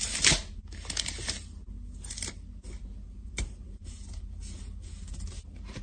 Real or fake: real